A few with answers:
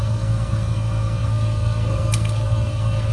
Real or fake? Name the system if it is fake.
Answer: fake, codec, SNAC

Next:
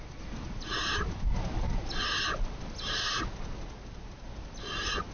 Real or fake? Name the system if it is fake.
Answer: real